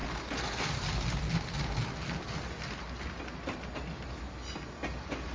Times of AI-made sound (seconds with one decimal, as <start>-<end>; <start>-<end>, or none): none